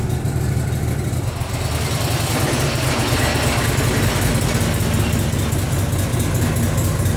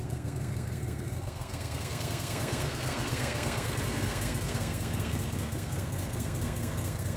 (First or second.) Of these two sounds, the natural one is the first